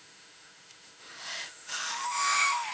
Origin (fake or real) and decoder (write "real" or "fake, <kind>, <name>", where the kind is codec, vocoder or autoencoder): fake, autoencoder, DAC-VAE